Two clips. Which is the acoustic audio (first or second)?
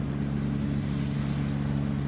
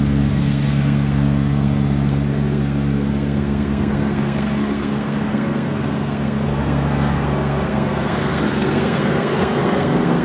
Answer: first